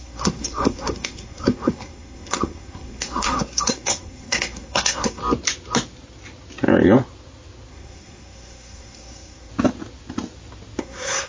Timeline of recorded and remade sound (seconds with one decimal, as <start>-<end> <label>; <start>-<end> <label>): 0.0-5.2 remade; 5.2-7.7 recorded; 7.7-9.5 remade; 9.5-10.8 recorded; 10.8-11.3 remade